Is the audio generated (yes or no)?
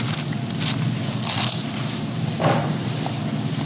no